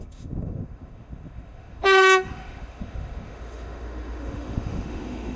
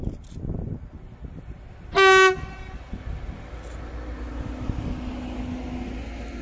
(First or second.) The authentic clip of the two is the second